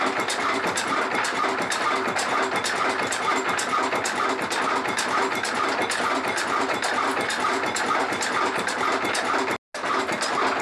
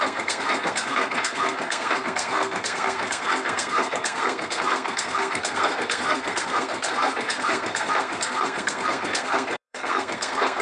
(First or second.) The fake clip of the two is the second